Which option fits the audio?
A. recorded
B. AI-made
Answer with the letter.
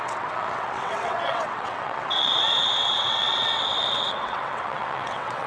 B